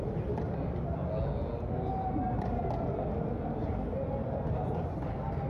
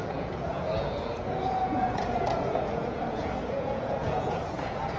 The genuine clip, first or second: first